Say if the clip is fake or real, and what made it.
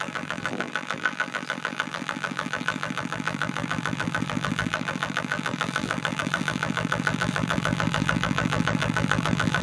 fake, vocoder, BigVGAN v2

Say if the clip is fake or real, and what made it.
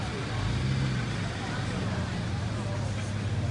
real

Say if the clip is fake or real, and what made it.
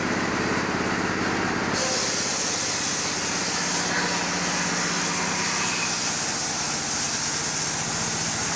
real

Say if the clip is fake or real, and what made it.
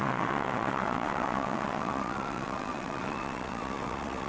fake, vocoder, WaveNeXt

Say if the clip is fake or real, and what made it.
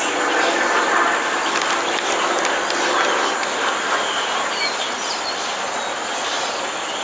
real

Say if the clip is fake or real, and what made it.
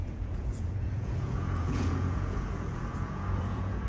fake, vocoder, Vocos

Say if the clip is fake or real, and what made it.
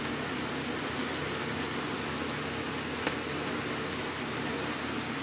real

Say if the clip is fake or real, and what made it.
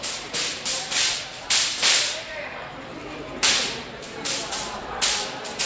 fake, vocoder, BigVGAN v2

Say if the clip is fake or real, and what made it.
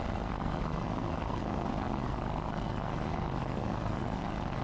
fake, codec, SNAC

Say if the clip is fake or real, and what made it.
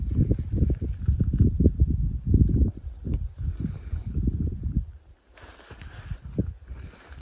real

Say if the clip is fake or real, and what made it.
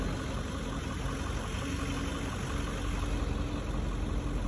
real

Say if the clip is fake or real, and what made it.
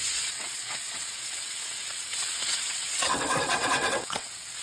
fake, vocoder, WaveNeXt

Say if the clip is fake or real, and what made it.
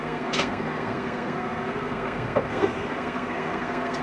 fake, codec, SNAC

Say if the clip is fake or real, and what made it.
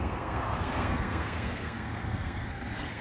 fake, codec, SNAC